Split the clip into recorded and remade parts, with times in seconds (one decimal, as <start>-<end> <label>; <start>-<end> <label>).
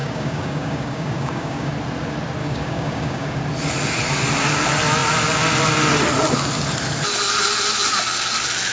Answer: 0.0-1.7 remade; 1.7-2.4 recorded; 2.4-3.4 remade; 3.4-8.7 recorded